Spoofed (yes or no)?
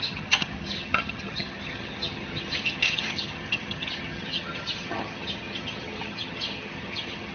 yes